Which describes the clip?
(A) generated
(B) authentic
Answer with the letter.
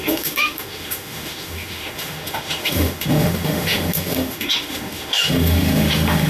A